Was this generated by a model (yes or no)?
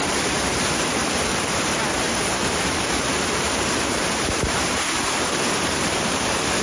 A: yes